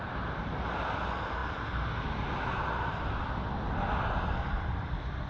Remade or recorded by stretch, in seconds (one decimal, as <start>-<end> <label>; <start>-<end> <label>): 0.0-5.3 recorded